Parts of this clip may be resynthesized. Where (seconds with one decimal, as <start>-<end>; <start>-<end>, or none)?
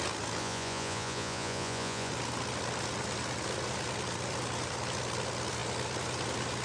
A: 0.4-2.1